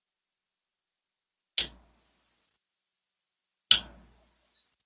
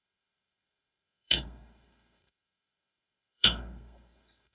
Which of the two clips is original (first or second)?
first